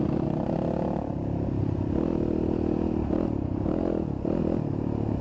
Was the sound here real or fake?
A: real